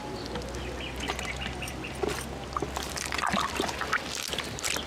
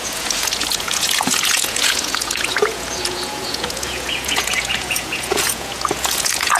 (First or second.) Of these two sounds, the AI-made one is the second